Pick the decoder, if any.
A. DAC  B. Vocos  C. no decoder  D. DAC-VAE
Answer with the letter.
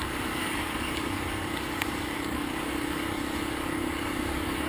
A